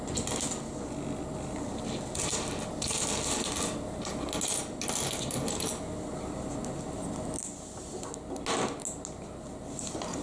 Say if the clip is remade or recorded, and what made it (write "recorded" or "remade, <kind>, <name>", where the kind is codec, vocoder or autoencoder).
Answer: recorded